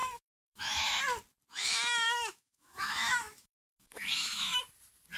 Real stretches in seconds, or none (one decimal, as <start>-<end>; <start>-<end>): 1.0-1.5; 4.6-5.2